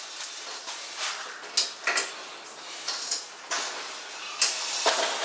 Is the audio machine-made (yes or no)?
no